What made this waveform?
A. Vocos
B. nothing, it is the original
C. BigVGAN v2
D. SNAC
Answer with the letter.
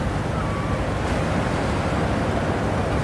B